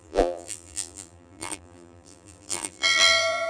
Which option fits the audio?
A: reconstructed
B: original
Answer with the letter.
A